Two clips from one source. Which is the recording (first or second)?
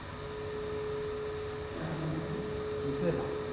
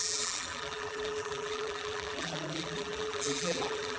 first